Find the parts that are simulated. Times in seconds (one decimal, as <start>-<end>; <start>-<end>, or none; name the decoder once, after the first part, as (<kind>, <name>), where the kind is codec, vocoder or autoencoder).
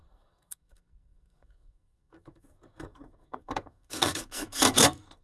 0.0-5.2 (codec, SNAC)